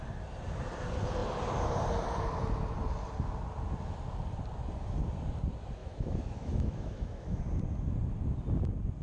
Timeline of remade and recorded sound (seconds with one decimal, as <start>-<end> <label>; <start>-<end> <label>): 0.0-5.8 recorded; 5.8-7.4 remade; 7.4-9.0 recorded